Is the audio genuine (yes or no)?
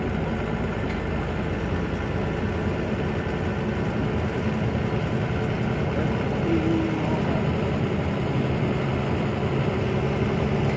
yes